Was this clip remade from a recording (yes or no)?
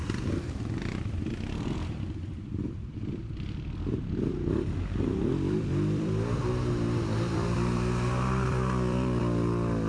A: yes